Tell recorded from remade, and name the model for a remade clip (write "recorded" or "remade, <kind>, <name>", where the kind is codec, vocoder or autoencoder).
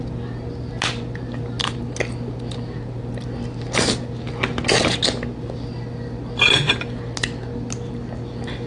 recorded